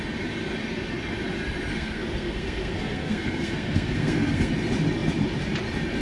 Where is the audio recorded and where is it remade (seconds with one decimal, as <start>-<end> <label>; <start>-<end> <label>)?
0.0-1.7 recorded; 1.7-4.5 remade; 4.5-6.0 recorded